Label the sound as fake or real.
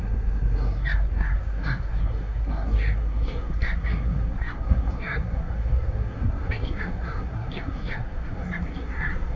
fake